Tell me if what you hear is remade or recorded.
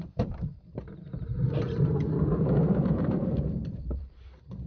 remade